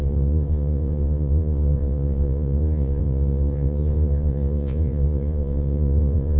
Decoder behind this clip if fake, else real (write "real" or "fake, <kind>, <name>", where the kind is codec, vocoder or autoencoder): fake, vocoder, Vocos